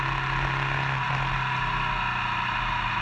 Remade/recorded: recorded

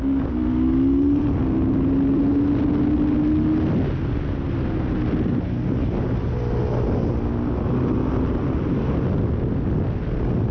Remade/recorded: recorded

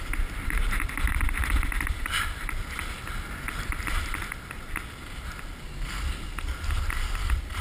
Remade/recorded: recorded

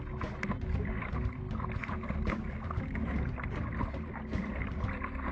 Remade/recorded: recorded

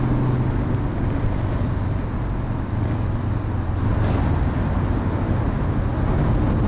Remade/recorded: recorded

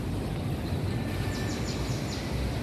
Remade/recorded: recorded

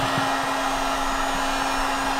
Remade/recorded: recorded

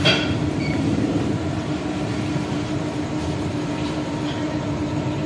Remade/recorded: remade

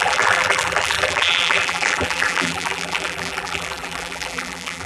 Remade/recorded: remade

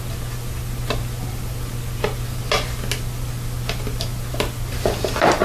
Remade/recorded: recorded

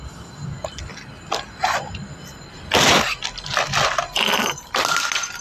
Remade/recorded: recorded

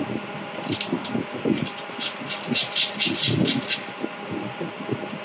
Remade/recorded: recorded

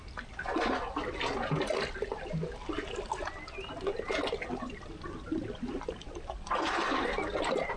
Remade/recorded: recorded